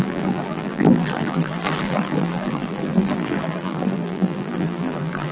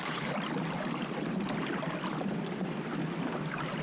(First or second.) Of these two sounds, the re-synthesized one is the first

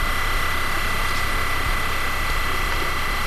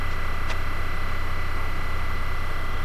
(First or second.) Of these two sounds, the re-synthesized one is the first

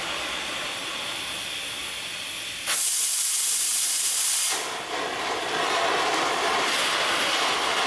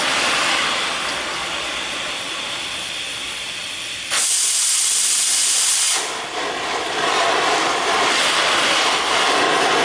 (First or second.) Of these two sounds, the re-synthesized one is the second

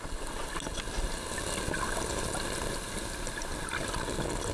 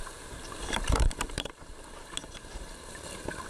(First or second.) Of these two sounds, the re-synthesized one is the second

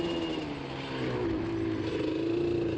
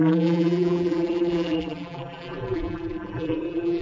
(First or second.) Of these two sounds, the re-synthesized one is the second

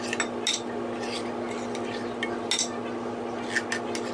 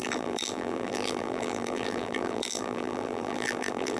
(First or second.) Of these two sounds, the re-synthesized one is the second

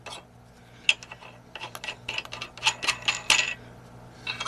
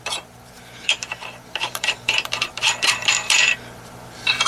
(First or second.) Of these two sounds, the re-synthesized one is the second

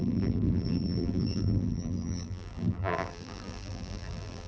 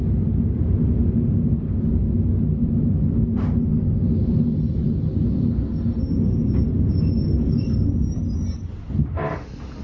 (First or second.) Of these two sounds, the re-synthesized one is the first